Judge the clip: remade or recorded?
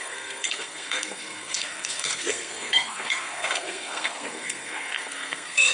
remade